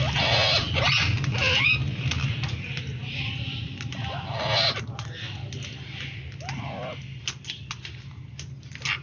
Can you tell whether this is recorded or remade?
recorded